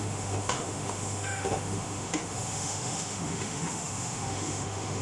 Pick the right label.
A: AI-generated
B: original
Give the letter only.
A